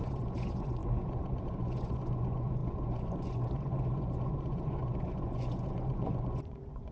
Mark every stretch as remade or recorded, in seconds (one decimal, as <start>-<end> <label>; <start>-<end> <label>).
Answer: 0.0-6.9 remade